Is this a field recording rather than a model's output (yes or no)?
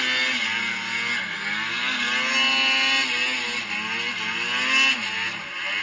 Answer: yes